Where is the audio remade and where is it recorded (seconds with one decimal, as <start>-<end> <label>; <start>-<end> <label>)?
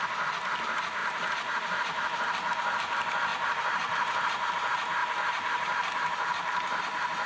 0.0-1.0 recorded; 1.0-2.5 remade; 2.5-3.3 recorded; 3.3-4.5 remade; 4.5-5.0 recorded; 5.0-6.8 remade; 6.8-7.3 recorded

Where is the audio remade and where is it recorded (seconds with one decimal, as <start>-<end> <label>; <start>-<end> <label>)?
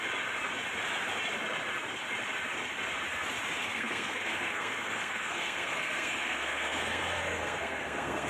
0.0-3.6 recorded; 3.6-8.3 remade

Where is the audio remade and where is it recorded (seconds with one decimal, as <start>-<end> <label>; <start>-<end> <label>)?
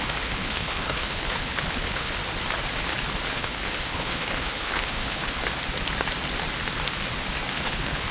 0.0-2.2 remade; 2.2-3.3 recorded; 3.3-5.4 remade; 5.4-7.5 recorded; 7.5-8.1 remade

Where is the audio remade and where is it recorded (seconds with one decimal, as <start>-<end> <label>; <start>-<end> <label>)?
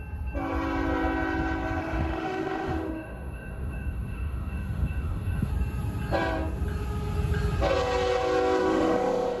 0.0-1.8 recorded; 1.8-5.5 remade; 5.5-8.6 recorded; 8.6-9.4 remade